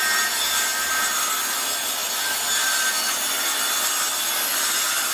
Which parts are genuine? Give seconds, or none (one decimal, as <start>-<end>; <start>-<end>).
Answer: 0.0-5.1